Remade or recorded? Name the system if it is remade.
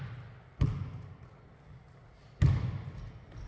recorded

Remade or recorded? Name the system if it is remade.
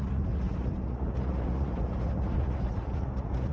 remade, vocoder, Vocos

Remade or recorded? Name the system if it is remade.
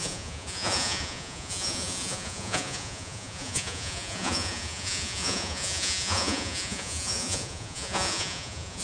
remade, vocoder, Vocos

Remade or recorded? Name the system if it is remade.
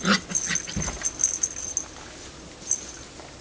recorded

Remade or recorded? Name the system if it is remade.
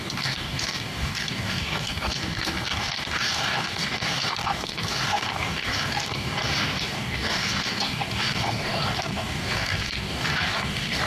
remade, codec, DAC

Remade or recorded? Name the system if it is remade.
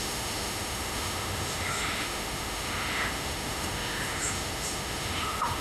remade, autoencoder, DAC-VAE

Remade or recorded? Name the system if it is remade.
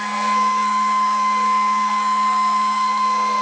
remade, codec, SNAC